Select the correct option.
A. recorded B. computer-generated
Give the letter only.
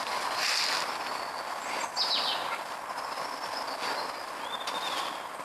A